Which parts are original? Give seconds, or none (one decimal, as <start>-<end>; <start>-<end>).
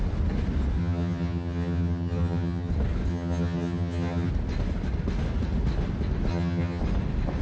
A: 0.0-0.8; 2.7-3.1; 4.3-6.3; 6.8-7.4